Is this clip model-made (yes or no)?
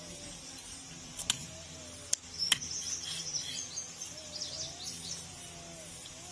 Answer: no